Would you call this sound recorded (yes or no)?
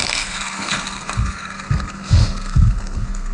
no